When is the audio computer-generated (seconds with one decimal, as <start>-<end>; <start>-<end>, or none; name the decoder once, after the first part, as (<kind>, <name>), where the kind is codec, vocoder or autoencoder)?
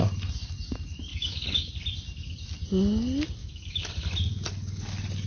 1.1-1.7 (autoencoder, DAC-VAE); 3.4-3.9